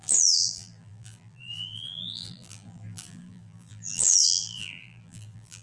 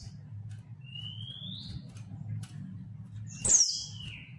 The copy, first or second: first